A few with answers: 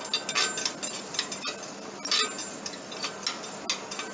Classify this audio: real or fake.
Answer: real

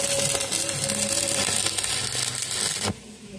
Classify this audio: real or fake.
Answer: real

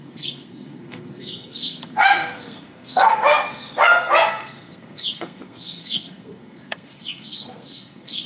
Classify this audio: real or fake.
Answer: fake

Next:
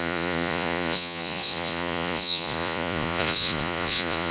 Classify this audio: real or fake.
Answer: fake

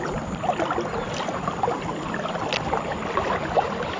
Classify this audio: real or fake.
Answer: real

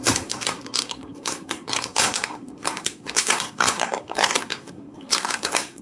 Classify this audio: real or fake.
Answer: fake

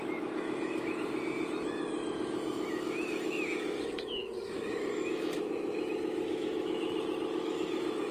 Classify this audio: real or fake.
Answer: fake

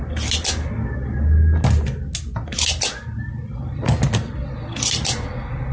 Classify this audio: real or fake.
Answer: real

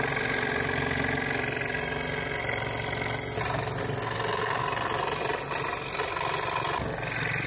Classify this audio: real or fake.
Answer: real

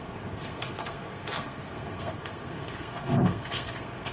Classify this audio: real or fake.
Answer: fake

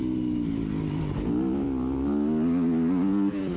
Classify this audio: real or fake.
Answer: real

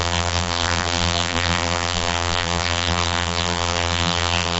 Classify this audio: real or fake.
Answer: fake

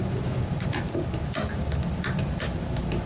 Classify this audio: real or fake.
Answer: real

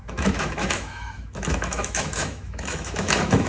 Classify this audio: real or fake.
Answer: fake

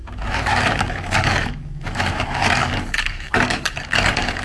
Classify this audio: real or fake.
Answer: fake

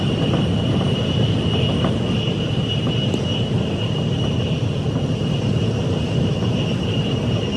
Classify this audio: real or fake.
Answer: real